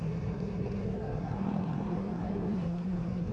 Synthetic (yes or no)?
yes